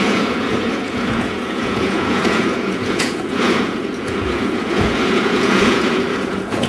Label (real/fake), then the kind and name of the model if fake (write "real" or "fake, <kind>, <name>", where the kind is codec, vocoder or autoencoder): fake, vocoder, Vocos